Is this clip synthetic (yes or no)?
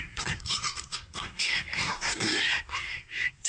yes